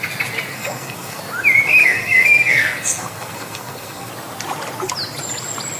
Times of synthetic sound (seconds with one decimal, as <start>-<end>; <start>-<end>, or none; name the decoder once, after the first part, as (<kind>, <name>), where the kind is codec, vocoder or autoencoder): 0.5-1.2 (codec, SNAC); 1.8-4.1